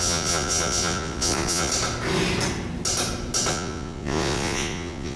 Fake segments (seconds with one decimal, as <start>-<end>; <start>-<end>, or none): 0.0-1.7; 3.5-5.2